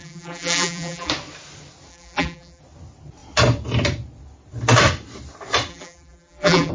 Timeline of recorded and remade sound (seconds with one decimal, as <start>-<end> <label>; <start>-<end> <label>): 0.0-1.1 remade; 1.1-1.9 recorded; 1.9-2.6 remade; 2.6-5.7 recorded; 5.7-6.7 remade